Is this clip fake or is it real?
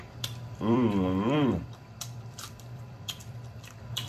fake